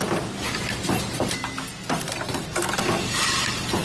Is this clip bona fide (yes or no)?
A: yes